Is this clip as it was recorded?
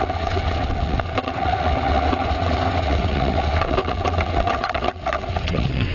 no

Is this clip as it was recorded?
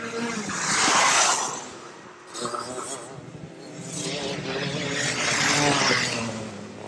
yes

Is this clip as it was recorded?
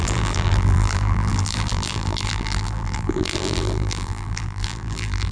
no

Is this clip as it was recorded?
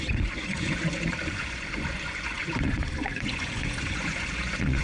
no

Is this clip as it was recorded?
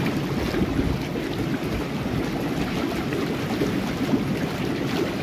yes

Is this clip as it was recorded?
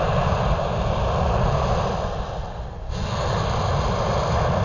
yes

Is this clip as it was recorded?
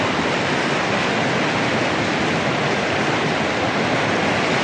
yes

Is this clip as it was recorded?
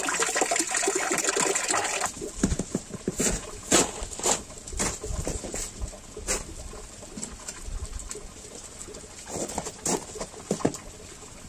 yes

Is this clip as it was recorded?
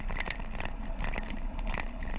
yes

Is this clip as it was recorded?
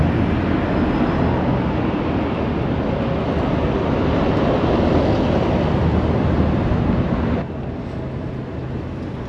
yes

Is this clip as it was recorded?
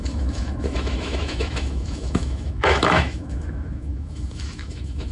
no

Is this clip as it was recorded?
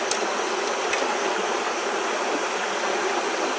yes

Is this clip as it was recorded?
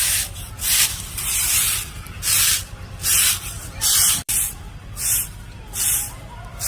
no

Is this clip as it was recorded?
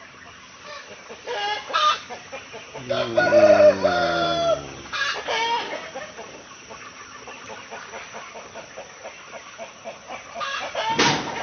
yes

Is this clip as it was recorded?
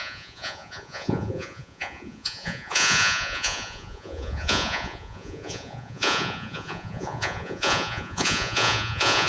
no